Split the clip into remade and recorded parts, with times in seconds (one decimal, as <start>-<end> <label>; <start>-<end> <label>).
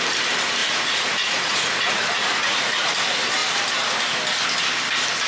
0.0-0.6 recorded; 0.6-2.9 remade; 2.9-5.3 recorded